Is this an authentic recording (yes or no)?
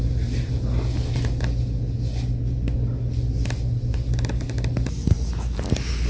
yes